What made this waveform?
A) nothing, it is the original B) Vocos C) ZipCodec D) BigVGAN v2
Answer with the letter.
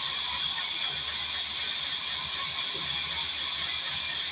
A